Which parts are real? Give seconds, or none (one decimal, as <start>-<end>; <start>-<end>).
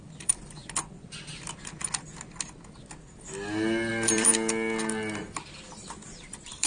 0.6-3.9; 4.3-5.5